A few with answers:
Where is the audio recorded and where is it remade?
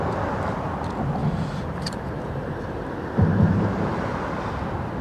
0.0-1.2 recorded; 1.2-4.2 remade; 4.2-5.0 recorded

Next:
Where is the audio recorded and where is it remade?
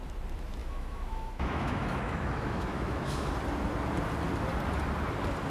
0.0-0.6 recorded; 0.6-3.3 remade; 3.3-5.5 recorded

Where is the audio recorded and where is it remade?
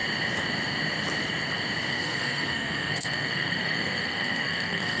0.0-1.9 recorded; 1.9-5.0 remade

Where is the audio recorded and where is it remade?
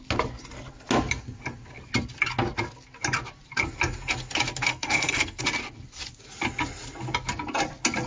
0.0-4.7 recorded; 4.7-5.4 remade; 5.4-8.1 recorded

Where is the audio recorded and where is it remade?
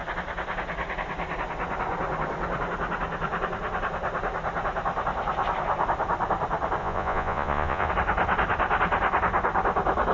0.0-6.8 recorded; 6.8-7.9 remade; 7.9-10.1 recorded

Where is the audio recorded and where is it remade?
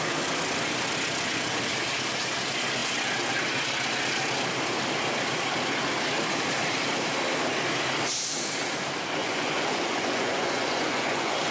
0.0-9.2 recorded; 9.2-11.5 remade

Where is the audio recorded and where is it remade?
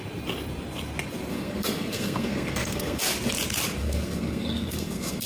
0.0-1.3 recorded; 1.3-3.0 remade; 3.0-3.8 recorded; 3.8-5.3 remade